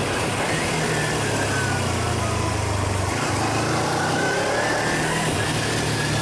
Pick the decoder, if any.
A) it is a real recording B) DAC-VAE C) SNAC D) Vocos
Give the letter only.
A